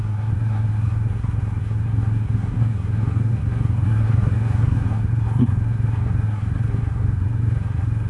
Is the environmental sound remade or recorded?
remade